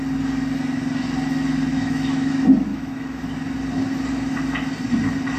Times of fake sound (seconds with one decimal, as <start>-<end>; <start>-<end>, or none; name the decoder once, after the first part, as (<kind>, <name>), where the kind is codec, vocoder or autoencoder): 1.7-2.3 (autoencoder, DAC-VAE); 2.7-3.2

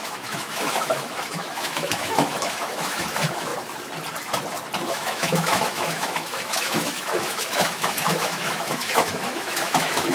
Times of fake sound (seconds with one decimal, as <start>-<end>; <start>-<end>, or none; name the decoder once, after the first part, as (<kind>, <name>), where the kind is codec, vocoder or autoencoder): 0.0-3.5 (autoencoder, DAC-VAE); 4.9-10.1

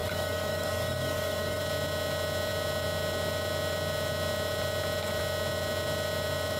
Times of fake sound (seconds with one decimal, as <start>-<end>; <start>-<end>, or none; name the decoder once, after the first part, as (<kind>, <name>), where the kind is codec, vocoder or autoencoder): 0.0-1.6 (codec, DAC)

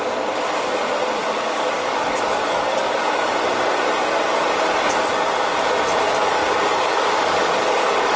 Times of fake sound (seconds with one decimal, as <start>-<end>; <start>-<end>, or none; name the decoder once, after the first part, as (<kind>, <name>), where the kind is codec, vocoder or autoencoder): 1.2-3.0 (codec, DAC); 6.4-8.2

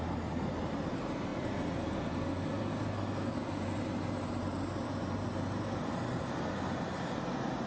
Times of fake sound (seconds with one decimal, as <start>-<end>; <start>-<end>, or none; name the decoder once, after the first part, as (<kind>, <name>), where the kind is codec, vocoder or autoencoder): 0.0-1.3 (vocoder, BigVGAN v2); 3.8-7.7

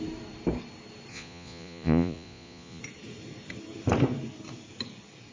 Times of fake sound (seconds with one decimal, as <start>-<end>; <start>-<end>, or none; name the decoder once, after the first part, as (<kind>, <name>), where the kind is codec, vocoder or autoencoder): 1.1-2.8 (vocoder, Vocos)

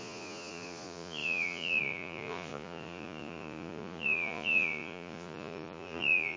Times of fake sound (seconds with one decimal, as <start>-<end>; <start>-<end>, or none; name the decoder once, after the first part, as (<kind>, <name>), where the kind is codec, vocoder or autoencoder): 0.0-6.4 (vocoder, Vocos)